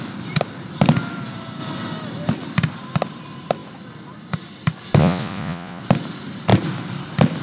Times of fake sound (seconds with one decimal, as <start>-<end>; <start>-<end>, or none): 5.0-5.8